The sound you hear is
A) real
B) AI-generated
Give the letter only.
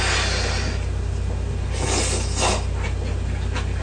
A